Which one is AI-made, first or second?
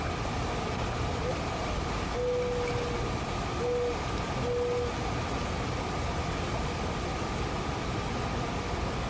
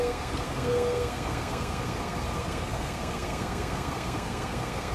second